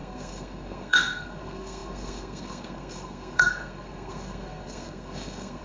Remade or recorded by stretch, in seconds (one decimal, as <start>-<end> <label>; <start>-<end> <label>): 0.0-5.6 remade